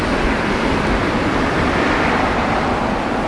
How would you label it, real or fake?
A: real